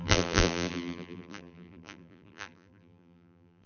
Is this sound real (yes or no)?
no